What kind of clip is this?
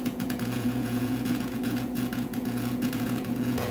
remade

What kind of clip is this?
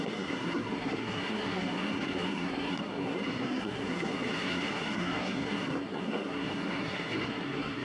remade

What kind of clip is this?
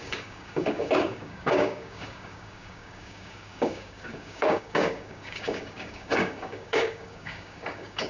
remade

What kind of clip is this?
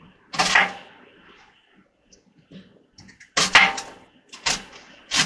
recorded